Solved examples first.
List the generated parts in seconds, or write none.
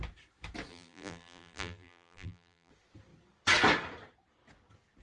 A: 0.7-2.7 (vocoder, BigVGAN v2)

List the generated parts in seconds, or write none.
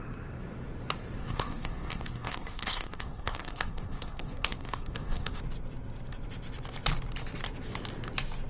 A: 1.2-5.4 (codec, SNAC)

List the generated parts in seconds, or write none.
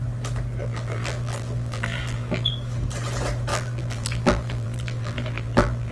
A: 0.6-2.5 (vocoder, BigVGAN v2); 3.5-5.9